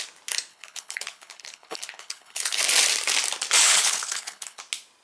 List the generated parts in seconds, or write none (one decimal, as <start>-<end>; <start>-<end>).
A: 0.5-2.6; 3.6-4.6